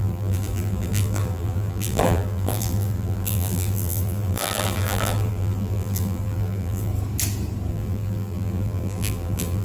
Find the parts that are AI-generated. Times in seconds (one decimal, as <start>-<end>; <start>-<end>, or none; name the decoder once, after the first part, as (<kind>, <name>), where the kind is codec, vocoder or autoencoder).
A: 0.0-6.9 (vocoder, BigVGAN v2); 7.7-9.6